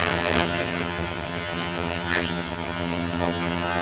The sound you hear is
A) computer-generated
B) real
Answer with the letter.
A